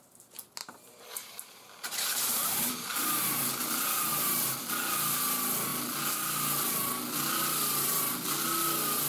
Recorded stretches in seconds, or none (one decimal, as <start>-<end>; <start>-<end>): 0.0-0.6; 1.6-2.4; 3.4-9.1

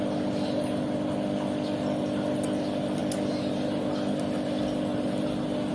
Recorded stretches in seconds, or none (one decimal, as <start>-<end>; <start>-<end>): 0.0-4.9

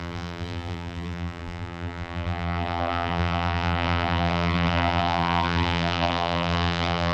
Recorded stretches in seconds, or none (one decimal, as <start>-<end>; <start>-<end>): none

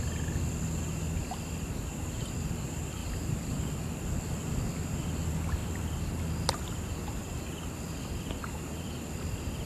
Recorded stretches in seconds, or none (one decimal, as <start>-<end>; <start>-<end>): 0.0-3.0; 3.6-5.6; 6.2-7.2; 8.9-9.7

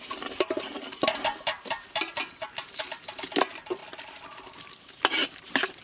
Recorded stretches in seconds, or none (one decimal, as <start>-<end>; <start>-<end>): 3.8-4.8

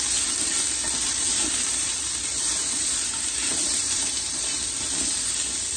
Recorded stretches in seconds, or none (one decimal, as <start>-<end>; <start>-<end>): 0.0-1.0; 4.3-5.8

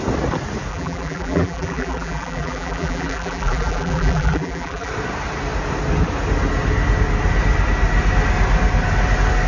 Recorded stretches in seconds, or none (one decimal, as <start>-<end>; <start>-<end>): 0.0-0.7; 4.9-9.5

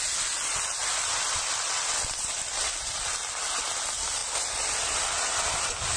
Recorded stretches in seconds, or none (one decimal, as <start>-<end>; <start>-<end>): 0.0-0.8; 3.4-6.0